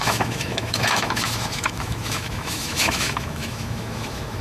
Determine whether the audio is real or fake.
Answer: fake